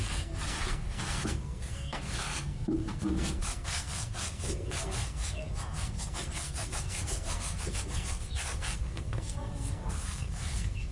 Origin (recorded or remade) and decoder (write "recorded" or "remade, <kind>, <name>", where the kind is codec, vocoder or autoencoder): remade, codec, SNAC